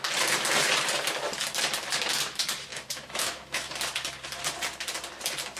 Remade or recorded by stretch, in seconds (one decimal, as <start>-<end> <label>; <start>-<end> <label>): 0.0-2.7 recorded; 2.7-3.7 remade; 3.7-5.6 recorded